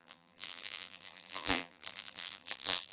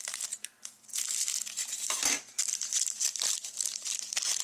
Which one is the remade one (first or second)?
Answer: first